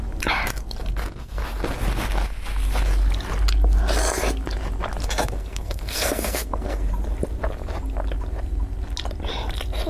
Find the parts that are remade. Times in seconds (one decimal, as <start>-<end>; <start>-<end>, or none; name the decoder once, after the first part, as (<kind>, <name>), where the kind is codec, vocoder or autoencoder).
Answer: 0.9-1.4 (codec, SNAC); 5.0-6.9

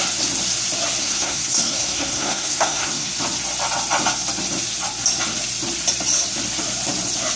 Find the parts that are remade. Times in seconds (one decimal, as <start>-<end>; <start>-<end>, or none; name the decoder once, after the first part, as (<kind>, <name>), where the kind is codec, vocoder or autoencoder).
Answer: 1.0-3.1 (codec, SNAC)

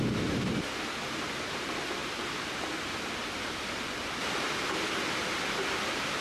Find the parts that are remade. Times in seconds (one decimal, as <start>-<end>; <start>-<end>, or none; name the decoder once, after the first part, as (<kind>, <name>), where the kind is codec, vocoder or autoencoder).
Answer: none

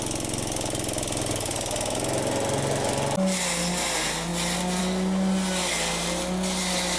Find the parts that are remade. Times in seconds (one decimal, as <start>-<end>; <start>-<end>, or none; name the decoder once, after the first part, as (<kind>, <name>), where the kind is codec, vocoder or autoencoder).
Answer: none

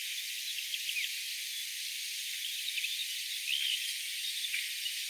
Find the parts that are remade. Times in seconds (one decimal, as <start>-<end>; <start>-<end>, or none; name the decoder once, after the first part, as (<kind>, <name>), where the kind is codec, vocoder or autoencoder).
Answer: none